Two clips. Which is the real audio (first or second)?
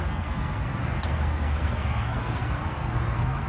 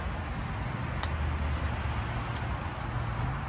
second